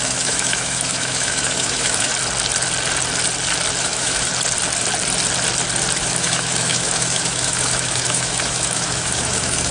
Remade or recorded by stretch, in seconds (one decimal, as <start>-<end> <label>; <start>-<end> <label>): 0.0-2.1 remade; 2.1-3.8 recorded; 3.8-4.3 remade; 4.3-6.0 recorded; 6.0-9.7 remade